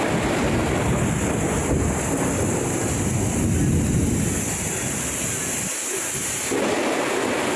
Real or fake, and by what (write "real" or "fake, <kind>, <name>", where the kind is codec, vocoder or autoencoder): real